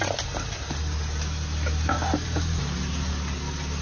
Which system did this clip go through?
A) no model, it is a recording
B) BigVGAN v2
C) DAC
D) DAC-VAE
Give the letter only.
A